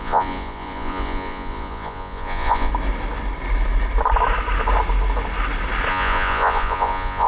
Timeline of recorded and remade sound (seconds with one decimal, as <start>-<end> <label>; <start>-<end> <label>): 0.0-2.7 remade; 2.7-5.9 recorded; 5.9-7.3 remade